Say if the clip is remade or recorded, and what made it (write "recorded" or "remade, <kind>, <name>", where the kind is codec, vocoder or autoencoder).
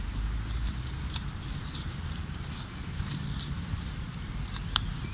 recorded